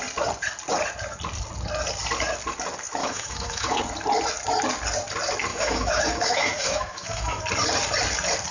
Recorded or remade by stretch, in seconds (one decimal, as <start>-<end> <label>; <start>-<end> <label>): 0.0-3.0 recorded; 3.0-3.8 remade; 3.8-5.5 recorded; 5.5-7.4 remade; 7.4-8.5 recorded